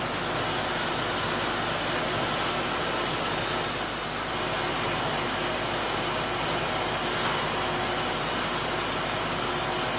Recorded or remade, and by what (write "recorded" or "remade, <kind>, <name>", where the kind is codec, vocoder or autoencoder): recorded